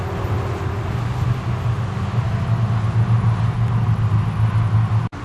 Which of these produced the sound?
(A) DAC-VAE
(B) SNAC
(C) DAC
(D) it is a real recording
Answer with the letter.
D